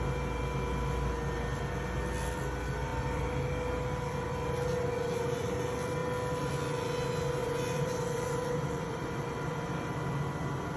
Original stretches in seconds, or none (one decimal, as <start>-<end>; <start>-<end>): 0.0-2.9; 5.6-6.0; 6.5-7.4; 10.3-10.8